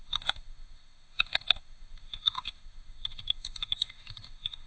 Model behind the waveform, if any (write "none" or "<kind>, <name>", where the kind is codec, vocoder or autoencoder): autoencoder, DAC-VAE